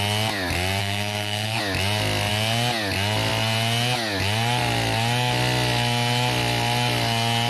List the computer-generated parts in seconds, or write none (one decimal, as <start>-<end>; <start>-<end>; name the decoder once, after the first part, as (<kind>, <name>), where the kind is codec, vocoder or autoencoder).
0.8-1.6 (codec, SNAC)